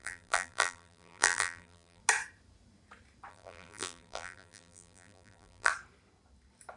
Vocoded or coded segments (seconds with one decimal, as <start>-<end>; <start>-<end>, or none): 0.0-2.0; 3.3-5.7